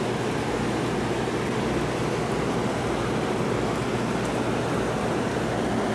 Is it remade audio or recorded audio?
recorded